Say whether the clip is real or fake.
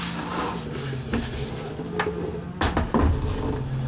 real